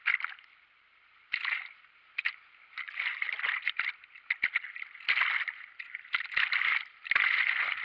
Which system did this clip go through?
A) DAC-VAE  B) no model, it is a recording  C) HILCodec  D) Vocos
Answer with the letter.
B